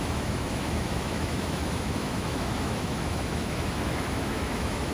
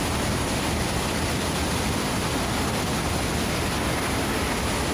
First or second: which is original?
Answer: second